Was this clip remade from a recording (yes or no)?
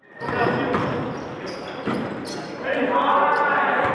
no